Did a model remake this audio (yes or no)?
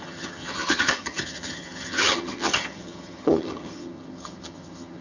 yes